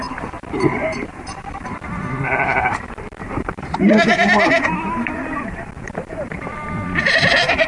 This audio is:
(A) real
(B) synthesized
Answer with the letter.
B